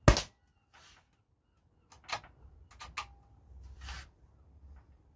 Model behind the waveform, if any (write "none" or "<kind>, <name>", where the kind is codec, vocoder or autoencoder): none